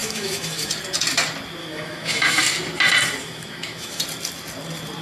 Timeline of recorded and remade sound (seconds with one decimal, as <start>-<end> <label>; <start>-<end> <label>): 0.0-0.7 remade; 0.7-1.6 recorded; 1.6-2.4 remade; 2.4-3.2 recorded; 3.2-4.0 remade; 4.0-5.0 recorded